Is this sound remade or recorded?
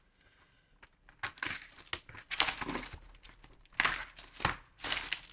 recorded